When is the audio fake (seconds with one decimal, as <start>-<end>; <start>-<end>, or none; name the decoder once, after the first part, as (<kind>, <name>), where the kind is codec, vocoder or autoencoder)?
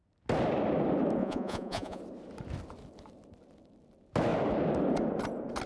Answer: 1.2-2.0 (vocoder, Vocos)